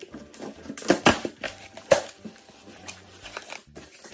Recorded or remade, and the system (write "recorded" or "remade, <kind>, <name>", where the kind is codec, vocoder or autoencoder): recorded